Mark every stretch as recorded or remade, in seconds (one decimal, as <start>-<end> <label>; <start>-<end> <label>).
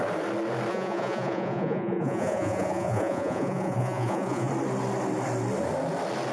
0.0-0.7 recorded; 0.7-4.5 remade; 4.5-6.3 recorded